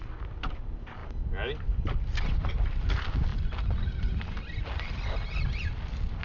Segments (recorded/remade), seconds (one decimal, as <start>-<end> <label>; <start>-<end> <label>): 0.0-6.2 recorded